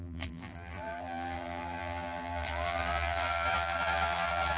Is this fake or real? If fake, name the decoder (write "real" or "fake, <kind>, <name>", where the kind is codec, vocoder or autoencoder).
fake, vocoder, BigVGAN v2